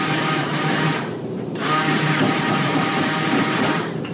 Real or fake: fake